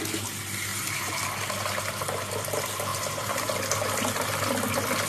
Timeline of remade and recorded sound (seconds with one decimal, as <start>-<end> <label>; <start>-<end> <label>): 0.0-0.7 recorded; 0.7-1.2 remade; 1.2-2.9 recorded; 2.9-3.5 remade; 3.5-5.1 recorded